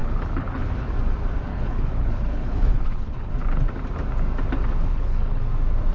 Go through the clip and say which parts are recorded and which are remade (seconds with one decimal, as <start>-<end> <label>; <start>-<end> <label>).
0.0-0.9 remade; 0.9-1.5 recorded; 1.5-3.3 remade; 3.3-4.9 recorded; 4.9-5.4 remade; 5.4-5.9 recorded